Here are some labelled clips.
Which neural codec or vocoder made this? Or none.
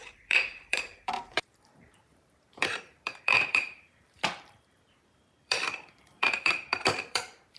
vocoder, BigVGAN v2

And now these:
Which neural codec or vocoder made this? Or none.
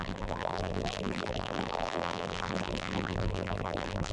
vocoder, BigVGAN v2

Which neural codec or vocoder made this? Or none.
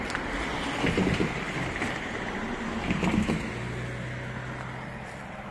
none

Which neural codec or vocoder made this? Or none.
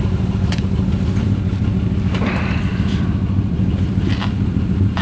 vocoder, BigVGAN v2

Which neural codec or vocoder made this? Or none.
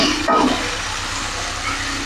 none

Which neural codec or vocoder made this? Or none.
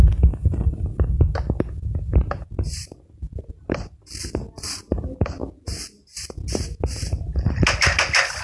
none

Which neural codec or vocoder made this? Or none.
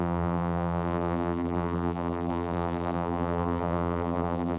vocoder, BigVGAN v2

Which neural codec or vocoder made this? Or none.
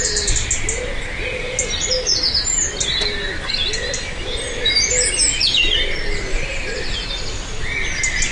none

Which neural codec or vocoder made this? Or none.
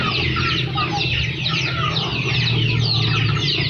none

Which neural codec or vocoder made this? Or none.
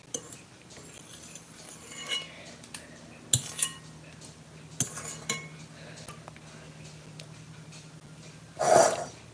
none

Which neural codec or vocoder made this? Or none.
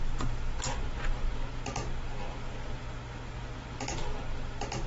none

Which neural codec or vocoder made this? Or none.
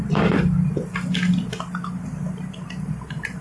none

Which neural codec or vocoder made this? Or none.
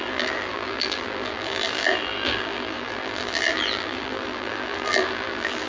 vocoder, BigVGAN v2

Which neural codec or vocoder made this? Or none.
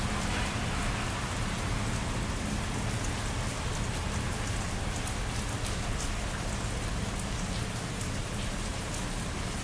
none